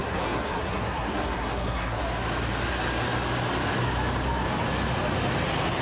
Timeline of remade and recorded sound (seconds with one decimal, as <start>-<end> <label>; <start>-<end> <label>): 0.0-2.0 remade; 2.0-5.8 recorded